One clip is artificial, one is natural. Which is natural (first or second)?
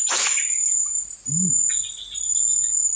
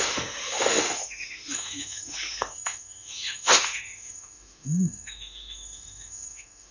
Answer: first